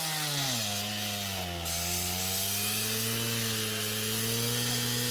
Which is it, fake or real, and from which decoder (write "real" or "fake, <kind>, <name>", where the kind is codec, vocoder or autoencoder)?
real